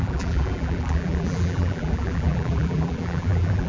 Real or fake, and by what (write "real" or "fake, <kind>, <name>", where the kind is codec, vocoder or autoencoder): fake, vocoder, BigVGAN v2